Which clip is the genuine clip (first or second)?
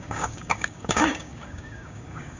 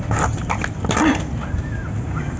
second